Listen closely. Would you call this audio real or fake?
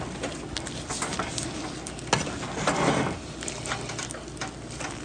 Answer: real